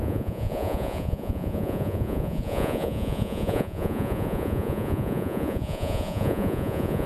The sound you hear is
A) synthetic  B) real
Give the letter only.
A